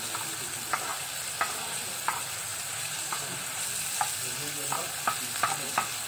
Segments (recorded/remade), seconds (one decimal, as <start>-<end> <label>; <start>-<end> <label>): 0.0-2.5 recorded; 2.5-3.6 remade; 3.6-6.1 recorded